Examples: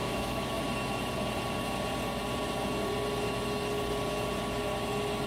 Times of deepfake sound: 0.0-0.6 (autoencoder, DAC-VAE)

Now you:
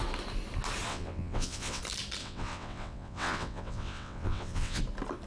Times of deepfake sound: 0.9-1.8 (vocoder, WaveNeXt); 2.2-4.8